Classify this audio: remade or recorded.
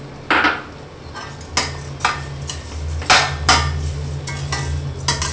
recorded